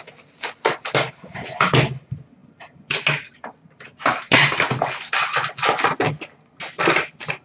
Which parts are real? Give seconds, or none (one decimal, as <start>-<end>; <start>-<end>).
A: 0.0-7.4

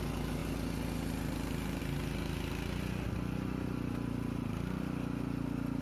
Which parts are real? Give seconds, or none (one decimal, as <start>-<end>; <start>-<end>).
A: 0.0-5.8

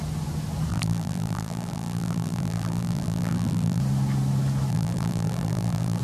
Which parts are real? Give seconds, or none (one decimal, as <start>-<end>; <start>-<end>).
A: 0.0-0.7; 3.8-4.7

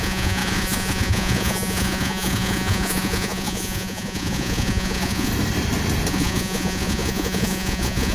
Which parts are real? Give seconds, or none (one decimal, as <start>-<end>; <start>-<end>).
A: 5.3-6.1

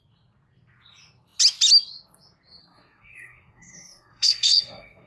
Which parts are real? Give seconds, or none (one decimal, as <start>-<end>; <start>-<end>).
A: 0.0-2.6

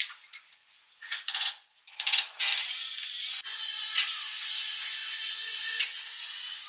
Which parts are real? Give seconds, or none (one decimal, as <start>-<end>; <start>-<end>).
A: 2.5-3.3